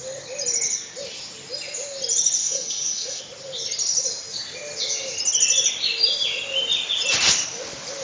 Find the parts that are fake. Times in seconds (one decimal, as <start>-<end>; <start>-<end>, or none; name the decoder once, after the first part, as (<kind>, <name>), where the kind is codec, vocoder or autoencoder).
2.4-3.2 (codec, SNAC)